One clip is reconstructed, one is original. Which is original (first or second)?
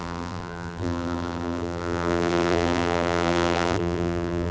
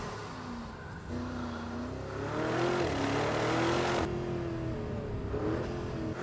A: second